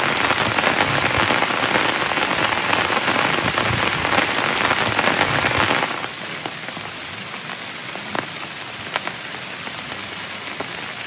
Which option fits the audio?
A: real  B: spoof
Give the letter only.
A